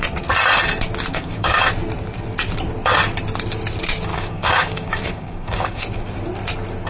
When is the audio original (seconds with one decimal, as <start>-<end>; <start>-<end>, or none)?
0.0-1.1; 1.7-4.1; 6.1-6.9